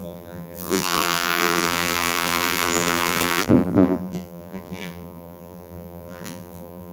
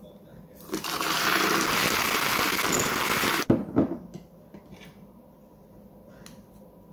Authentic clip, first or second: second